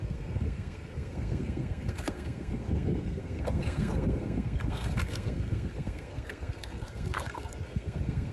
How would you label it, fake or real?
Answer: fake